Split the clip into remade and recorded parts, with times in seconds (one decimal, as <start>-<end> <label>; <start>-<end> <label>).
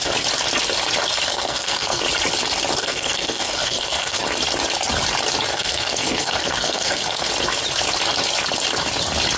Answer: 0.0-1.3 recorded; 1.3-2.0 remade; 2.0-2.8 recorded; 2.8-4.2 remade; 4.2-5.5 recorded; 5.5-7.3 remade; 7.3-9.4 recorded